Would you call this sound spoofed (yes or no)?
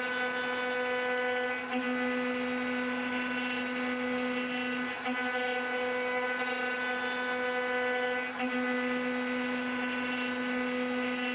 no